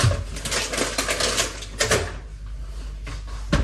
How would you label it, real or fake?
real